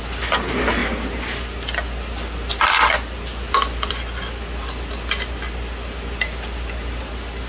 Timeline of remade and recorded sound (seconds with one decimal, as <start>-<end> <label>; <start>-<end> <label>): 0.0-7.5 recorded